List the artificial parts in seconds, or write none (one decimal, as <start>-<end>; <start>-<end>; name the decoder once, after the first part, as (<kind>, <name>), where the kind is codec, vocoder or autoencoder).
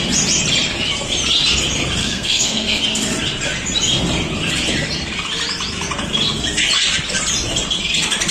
2.0-2.8 (codec, SNAC)